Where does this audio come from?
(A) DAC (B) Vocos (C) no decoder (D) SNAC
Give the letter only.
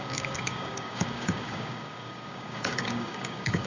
A